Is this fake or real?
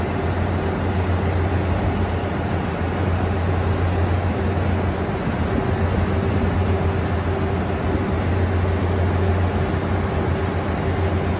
real